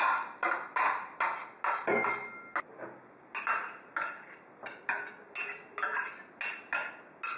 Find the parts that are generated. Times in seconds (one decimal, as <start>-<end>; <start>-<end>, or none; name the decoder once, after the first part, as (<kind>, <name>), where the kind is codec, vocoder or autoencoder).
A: none